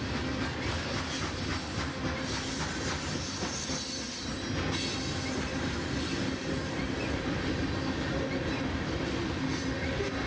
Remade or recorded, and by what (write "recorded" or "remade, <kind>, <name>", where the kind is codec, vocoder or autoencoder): recorded